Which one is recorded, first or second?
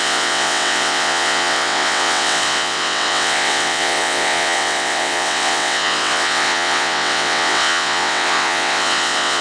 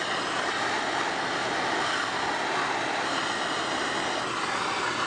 second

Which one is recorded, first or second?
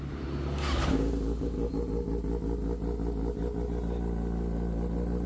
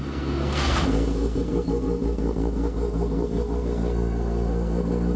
first